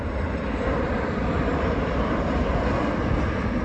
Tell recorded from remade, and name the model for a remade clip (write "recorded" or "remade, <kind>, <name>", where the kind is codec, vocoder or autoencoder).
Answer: recorded